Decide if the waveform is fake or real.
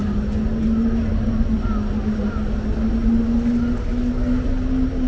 real